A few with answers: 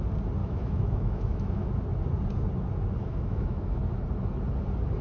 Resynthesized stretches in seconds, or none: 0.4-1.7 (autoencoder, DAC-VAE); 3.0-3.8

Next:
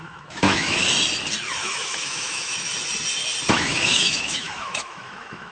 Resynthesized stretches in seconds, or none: 0.0-0.8 (autoencoder, DAC-VAE); 1.6-2.7; 3.5-5.5

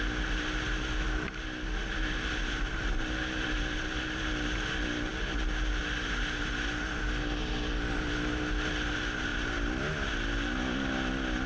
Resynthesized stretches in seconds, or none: none